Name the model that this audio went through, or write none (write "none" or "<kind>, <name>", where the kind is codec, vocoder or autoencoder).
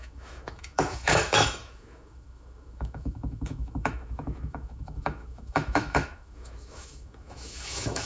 autoencoder, DAC-VAE